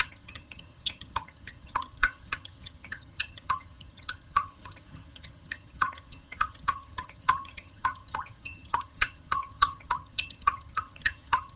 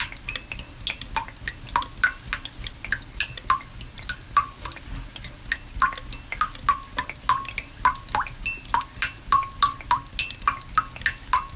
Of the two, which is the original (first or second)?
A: second